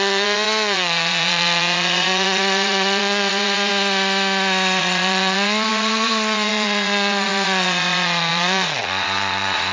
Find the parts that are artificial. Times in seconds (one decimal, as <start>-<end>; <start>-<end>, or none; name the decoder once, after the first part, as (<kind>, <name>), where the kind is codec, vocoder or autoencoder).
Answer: 0.0-3.7 (vocoder, Vocos); 4.8-9.7